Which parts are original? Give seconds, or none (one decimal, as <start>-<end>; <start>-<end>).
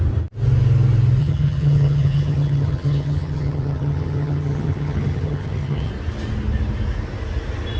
0.0-1.2; 5.9-7.8